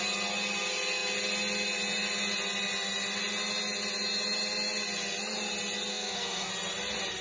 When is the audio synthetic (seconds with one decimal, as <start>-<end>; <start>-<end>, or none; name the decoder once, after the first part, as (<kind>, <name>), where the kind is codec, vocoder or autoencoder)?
5.9-6.5 (codec, SNAC)